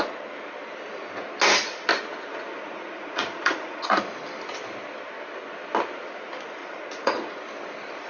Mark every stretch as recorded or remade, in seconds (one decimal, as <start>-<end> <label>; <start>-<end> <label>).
0.0-2.3 recorded; 2.3-4.0 remade; 4.0-6.6 recorded; 6.6-7.4 remade; 7.4-8.1 recorded